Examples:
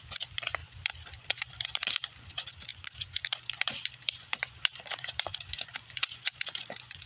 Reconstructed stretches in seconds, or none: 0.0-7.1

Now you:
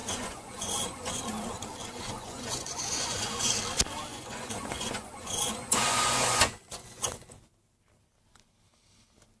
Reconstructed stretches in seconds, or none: 0.0-1.2; 1.8-3.5; 4.1-7.5

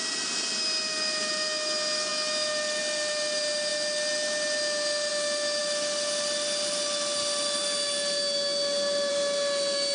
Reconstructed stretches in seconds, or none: none

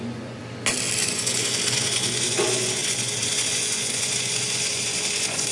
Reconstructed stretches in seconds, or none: 0.0-0.4; 1.0-5.5

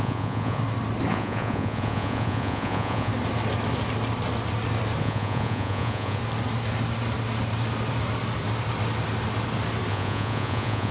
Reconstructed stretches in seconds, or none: 0.0-0.6; 1.1-3.1; 5.0-6.2; 9.9-10.9

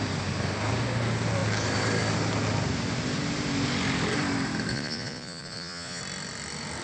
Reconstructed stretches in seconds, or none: 4.7-6.0

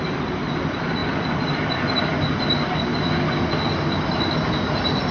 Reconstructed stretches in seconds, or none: none

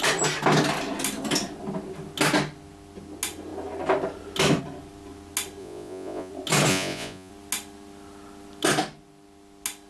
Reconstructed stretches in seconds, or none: 5.6-6.3; 6.7-7.3